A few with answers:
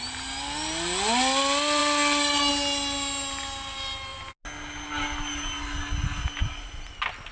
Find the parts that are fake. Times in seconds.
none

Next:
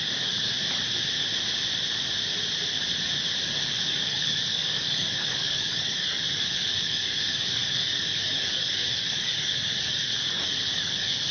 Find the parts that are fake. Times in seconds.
0.0-0.5; 3.4-11.3

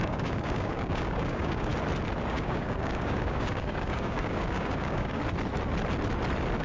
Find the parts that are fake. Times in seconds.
0.0-1.7; 2.3-5.2

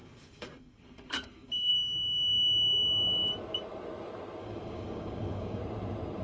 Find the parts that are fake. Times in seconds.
0.0-1.7; 4.4-5.6

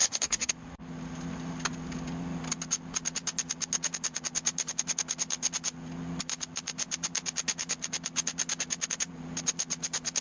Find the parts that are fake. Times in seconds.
0.0-0.5

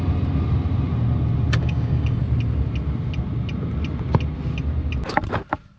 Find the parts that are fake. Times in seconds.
1.6-2.2

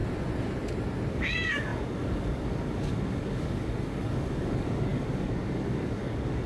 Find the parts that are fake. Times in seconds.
1.1-6.5

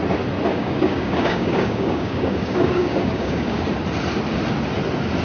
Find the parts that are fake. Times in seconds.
0.5-3.6